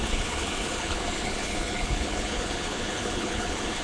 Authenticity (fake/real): fake